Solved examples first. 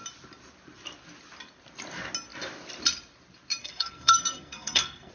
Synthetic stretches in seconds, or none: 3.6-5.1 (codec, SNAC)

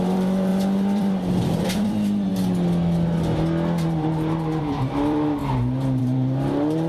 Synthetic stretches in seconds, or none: 0.0-2.3 (vocoder, BigVGAN v2); 4.6-5.4; 6.0-6.9

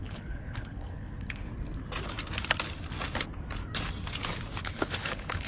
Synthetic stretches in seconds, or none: 0.0-1.5 (codec, HILCodec); 4.6-5.5

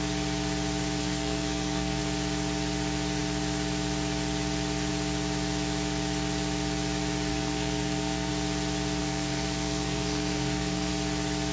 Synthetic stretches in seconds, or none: 1.0-2.0 (codec, SNAC); 7.3-8.3; 9.0-10.9

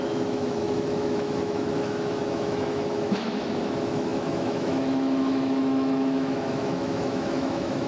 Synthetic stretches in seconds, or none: 0.0-7.9 (autoencoder, DAC-VAE)